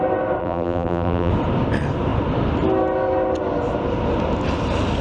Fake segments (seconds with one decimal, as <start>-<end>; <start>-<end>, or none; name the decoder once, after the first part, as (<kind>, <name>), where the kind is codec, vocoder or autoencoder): 0.4-1.3 (vocoder, BigVGAN v2)